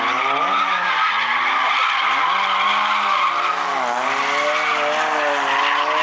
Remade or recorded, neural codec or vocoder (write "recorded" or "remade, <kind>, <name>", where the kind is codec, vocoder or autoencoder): recorded